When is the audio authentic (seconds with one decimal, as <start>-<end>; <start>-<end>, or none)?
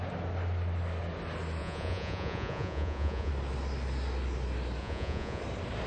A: 0.0-1.6; 3.3-4.8; 5.4-5.9